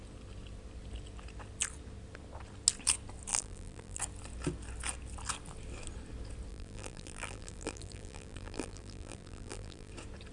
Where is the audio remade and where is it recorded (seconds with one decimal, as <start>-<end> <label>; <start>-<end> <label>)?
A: 0.0-3.3 recorded; 3.3-4.0 remade; 4.0-6.5 recorded; 6.5-9.9 remade; 9.9-10.3 recorded